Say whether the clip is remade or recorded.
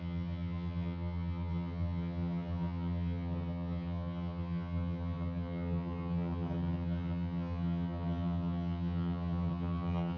remade